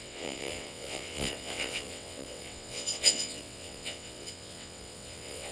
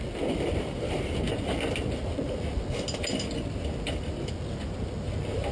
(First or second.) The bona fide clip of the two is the second